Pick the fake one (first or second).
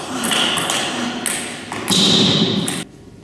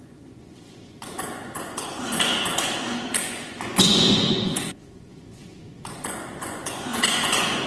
second